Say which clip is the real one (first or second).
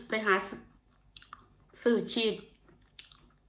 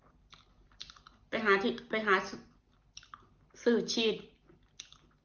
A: second